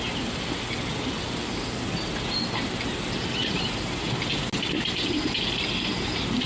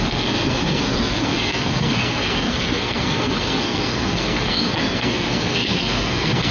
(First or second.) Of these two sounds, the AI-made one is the second